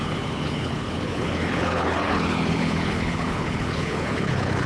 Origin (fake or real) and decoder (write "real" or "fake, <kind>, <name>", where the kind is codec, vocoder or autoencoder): fake, codec, HILCodec